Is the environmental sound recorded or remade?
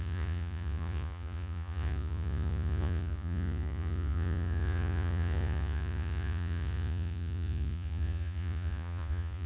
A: remade